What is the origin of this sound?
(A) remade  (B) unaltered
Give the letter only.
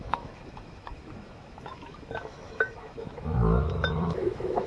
A